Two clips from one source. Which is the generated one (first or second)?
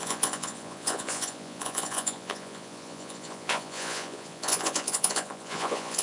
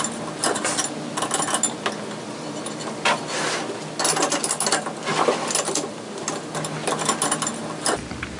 first